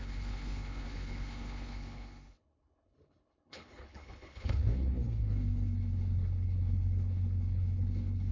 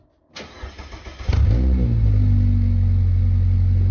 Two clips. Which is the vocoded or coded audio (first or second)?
first